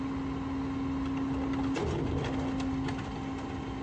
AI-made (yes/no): no